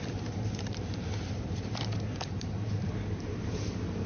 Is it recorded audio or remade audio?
remade